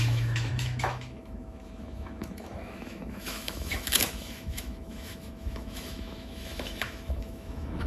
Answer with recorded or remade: remade